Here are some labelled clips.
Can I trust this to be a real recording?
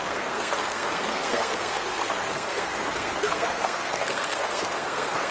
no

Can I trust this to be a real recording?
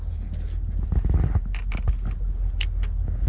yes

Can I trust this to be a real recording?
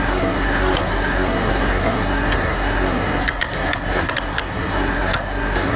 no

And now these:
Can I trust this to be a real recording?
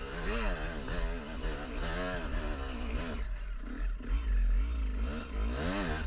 yes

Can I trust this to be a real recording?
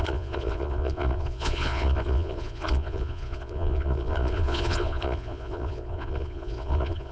no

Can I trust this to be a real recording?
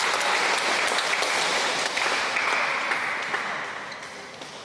yes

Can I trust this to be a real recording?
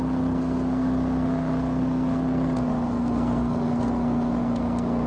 no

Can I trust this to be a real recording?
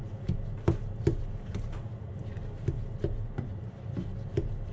yes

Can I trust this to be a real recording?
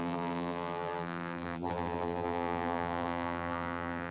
no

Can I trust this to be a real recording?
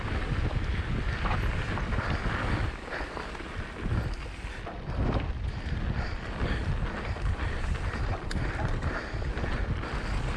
yes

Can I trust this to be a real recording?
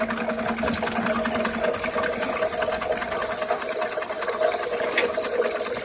yes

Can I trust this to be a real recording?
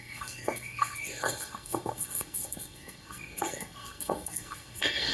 no